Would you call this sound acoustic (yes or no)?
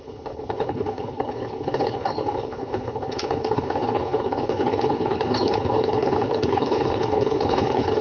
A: no